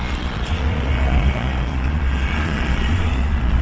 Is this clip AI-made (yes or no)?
yes